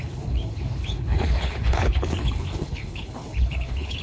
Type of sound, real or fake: fake